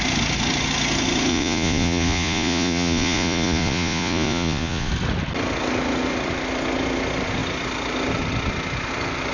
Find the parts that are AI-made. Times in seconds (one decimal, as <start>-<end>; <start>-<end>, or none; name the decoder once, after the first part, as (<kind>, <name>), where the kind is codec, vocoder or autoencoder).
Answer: 1.3-4.9 (vocoder, Vocos)